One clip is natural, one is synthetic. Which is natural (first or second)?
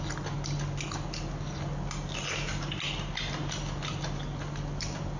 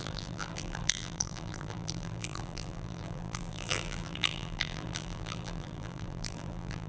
first